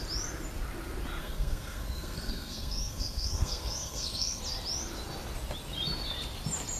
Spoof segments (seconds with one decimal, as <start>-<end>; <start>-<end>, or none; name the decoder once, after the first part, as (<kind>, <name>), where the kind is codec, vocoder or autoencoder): 1.2-4.4 (codec, SNAC)